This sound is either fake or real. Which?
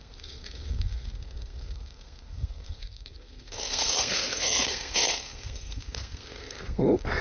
fake